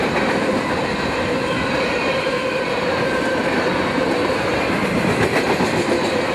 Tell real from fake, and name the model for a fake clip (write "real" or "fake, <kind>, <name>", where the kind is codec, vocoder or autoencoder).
real